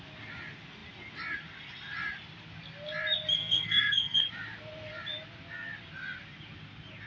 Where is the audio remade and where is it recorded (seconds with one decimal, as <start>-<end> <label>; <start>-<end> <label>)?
0.0-3.4 recorded; 3.4-4.2 remade; 4.2-7.1 recorded